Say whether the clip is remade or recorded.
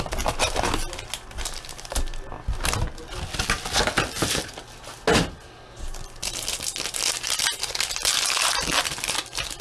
recorded